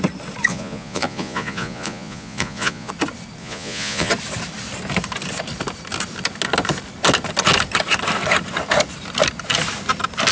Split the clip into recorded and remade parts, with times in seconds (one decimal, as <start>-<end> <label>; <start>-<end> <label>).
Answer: 0.0-0.5 recorded; 0.5-2.9 remade; 2.9-3.4 recorded; 3.4-4.1 remade; 4.1-10.3 recorded

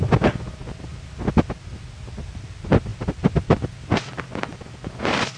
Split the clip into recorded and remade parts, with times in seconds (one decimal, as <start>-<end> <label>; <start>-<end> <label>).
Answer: 0.0-5.4 recorded

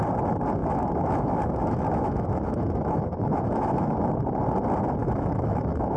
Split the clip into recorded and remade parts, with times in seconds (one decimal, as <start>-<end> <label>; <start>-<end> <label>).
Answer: 0.0-0.6 recorded; 0.6-4.2 remade; 4.2-5.0 recorded; 5.0-6.0 remade

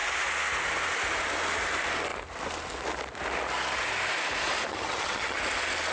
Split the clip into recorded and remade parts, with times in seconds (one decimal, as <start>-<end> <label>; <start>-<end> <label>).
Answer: 0.0-4.7 recorded; 4.7-5.4 remade; 5.4-5.9 recorded

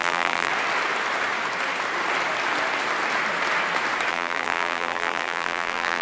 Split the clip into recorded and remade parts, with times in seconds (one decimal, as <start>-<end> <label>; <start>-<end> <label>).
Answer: 0.0-0.5 remade; 0.5-4.1 recorded; 4.1-6.0 remade

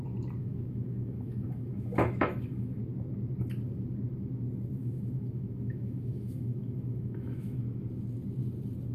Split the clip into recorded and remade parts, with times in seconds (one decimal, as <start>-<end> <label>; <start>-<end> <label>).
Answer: 0.0-0.4 recorded; 0.4-2.8 remade; 2.8-4.8 recorded; 4.8-7.6 remade; 7.6-8.9 recorded

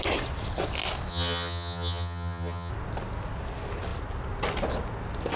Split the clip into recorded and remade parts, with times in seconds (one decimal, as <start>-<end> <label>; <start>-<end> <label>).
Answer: 0.0-1.1 recorded; 1.1-2.7 remade; 2.7-5.4 recorded